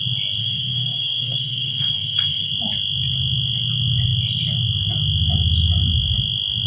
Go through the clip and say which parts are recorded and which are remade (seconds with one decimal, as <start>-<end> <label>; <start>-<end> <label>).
0.0-0.4 recorded; 0.4-2.5 remade; 2.5-6.7 recorded